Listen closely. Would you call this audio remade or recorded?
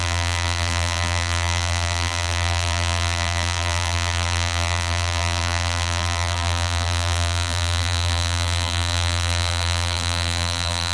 remade